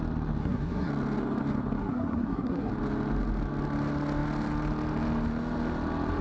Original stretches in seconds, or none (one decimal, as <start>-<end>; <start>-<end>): 0.0-0.4; 0.9-1.8; 2.7-6.2